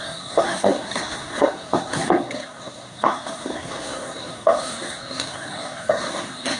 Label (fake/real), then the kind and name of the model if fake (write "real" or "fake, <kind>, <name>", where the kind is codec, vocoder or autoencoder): fake, codec, SNAC